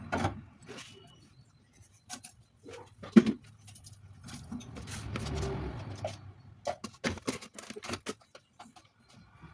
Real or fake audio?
real